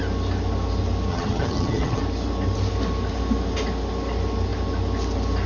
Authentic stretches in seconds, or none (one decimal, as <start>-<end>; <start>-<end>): 0.0-1.1; 2.0-5.5